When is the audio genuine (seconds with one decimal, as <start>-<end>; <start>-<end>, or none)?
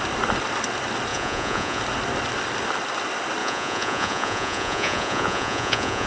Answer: 0.0-1.1; 1.8-3.4